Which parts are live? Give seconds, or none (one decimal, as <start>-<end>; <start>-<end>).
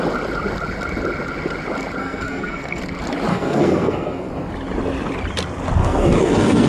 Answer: 0.0-2.0; 2.8-3.3; 4.3-5.8